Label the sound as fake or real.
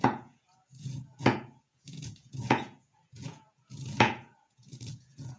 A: fake